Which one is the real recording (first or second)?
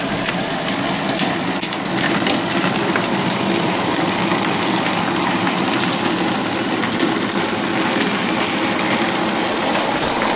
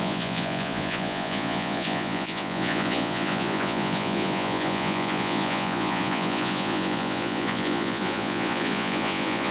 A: first